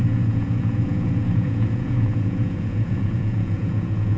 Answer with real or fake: fake